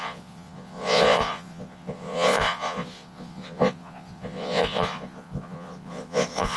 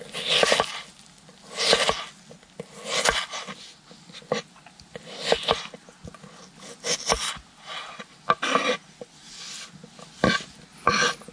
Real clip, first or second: second